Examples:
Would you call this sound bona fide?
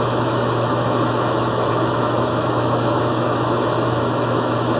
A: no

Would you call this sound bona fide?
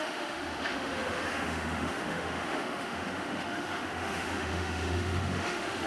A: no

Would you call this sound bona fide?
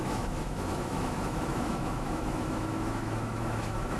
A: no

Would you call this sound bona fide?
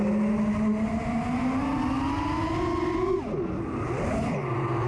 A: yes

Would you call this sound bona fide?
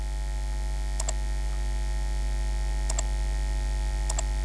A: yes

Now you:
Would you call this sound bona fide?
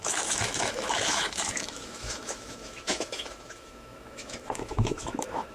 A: no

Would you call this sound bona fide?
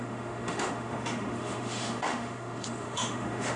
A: no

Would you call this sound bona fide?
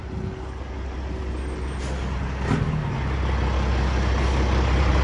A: yes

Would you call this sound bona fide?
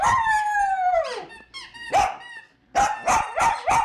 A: yes